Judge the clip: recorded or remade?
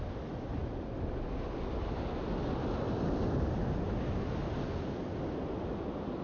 recorded